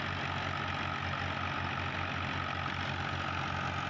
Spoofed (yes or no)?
no